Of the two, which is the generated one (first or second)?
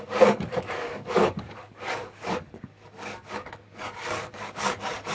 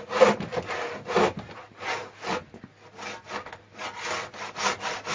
first